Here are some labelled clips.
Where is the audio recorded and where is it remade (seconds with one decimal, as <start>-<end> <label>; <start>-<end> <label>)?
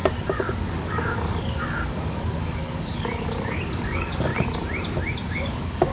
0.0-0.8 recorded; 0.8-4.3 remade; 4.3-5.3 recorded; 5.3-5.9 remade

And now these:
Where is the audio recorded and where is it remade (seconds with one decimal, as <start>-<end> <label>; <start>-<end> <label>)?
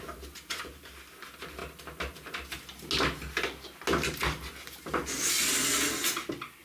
0.0-6.6 recorded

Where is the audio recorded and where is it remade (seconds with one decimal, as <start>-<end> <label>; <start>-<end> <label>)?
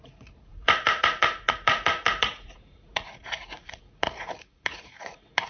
0.0-5.5 remade